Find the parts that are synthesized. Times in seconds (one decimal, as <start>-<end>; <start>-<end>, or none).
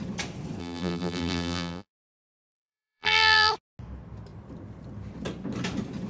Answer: 0.6-3.5